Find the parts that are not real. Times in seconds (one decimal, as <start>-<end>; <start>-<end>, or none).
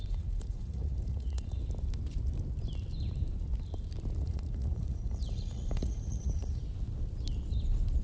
0.0-1.6; 4.2-6.6